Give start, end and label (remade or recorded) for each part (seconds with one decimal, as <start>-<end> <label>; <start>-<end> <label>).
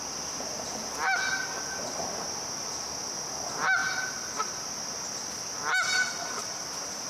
0.0-7.1 recorded